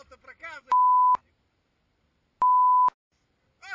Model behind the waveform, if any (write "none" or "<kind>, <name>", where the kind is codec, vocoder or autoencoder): none